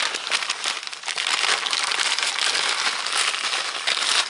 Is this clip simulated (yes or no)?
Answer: no